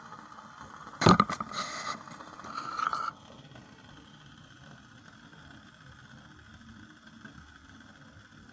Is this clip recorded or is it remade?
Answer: remade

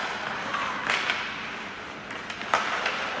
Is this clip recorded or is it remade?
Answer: recorded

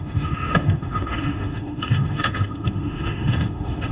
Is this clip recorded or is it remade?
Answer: remade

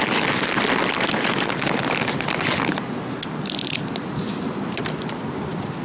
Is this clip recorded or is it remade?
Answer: recorded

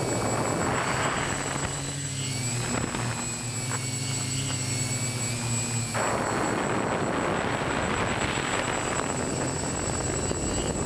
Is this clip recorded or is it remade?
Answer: recorded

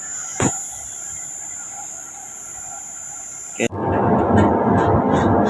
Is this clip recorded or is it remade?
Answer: recorded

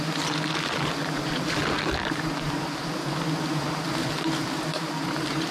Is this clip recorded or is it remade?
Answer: recorded